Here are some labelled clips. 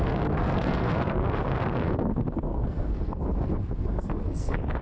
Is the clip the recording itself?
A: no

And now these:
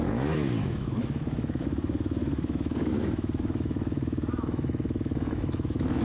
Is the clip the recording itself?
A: no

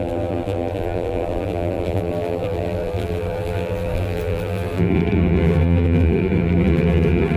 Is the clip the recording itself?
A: no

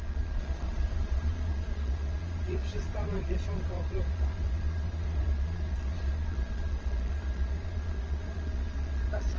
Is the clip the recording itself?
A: no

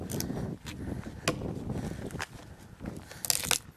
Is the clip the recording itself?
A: yes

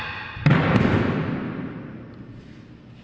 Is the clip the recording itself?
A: yes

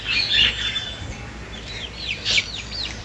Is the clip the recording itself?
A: yes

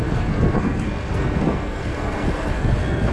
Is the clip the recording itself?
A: no